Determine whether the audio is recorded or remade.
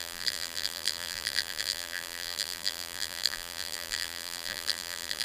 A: remade